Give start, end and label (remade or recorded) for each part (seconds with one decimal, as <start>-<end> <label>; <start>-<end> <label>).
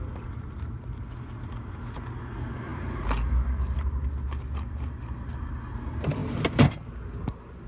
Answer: 0.0-7.7 recorded